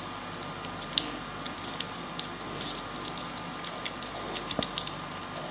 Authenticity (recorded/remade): recorded